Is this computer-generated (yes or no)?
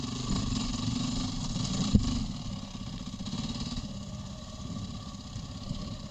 no